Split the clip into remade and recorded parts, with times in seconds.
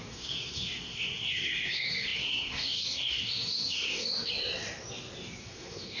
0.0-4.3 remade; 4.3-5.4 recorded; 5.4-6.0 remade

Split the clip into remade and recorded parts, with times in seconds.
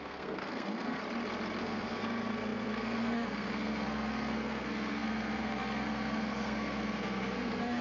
0.0-1.0 remade; 1.0-1.6 recorded; 1.6-7.8 remade